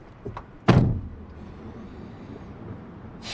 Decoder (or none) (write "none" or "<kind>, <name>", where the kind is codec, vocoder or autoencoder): none